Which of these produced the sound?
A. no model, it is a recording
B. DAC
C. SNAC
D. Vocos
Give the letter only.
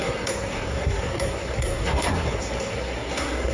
C